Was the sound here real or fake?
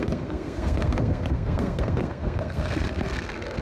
fake